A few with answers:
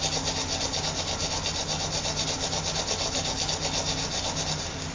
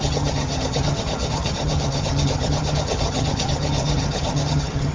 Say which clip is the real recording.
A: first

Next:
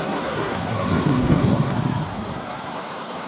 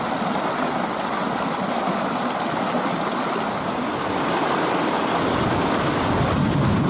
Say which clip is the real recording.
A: second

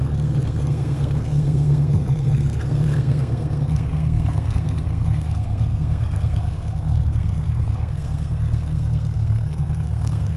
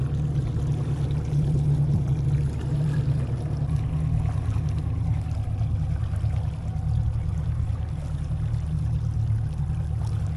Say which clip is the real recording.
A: second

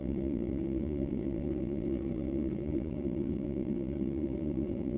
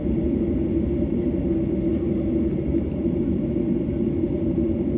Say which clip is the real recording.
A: second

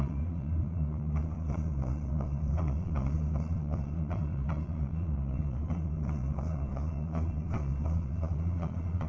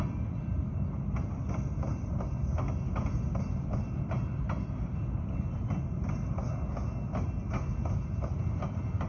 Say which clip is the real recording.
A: second